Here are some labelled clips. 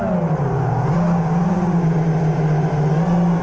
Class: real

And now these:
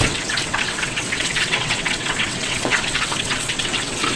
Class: fake